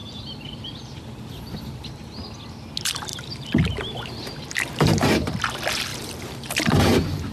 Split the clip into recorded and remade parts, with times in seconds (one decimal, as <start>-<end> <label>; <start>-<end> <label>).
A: 0.0-1.0 remade; 1.0-3.1 recorded; 3.1-5.4 remade; 5.4-5.9 recorded; 5.9-6.8 remade; 6.8-7.3 recorded